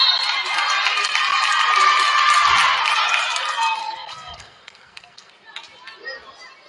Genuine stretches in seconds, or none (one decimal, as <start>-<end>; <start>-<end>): 0.0-3.8; 5.3-6.7